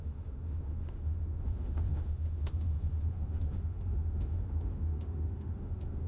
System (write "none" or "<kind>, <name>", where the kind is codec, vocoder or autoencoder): autoencoder, DAC-VAE